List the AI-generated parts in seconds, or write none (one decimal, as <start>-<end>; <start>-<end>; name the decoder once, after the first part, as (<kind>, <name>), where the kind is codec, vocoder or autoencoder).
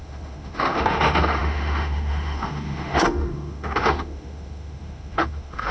0.0-5.7 (autoencoder, DAC-VAE)